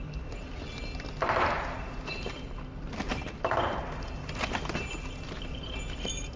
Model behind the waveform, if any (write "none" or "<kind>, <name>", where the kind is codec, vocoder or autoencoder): none